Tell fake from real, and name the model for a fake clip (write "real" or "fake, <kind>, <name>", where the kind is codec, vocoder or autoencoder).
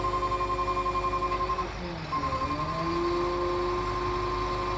real